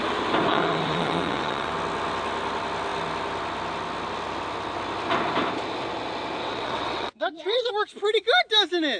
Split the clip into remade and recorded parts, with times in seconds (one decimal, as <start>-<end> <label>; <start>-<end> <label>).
0.0-0.5 recorded; 0.5-1.7 remade; 1.7-6.4 recorded; 6.4-7.7 remade; 7.7-9.0 recorded